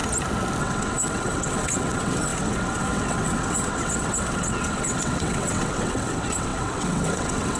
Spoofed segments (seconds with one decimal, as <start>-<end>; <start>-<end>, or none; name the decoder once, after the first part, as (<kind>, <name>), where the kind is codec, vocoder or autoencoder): 0.6-7.6 (vocoder, WaveNeXt)